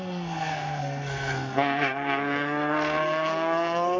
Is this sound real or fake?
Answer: fake